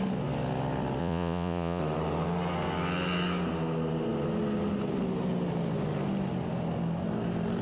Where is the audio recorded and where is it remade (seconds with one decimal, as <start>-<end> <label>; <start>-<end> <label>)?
0.0-1.0 recorded; 1.0-1.8 remade; 1.8-7.6 recorded